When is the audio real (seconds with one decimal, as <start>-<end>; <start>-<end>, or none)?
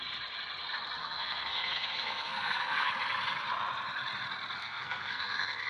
0.0-1.0; 2.9-4.6